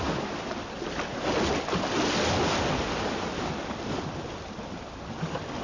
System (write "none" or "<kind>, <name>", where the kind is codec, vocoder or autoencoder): none